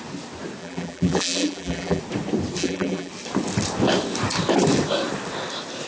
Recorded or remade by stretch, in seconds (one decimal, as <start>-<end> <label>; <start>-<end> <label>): 0.0-0.6 recorded; 0.6-2.0 remade; 2.0-2.6 recorded; 2.6-3.1 remade; 3.1-5.9 recorded